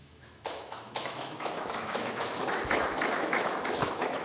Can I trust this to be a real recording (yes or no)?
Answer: no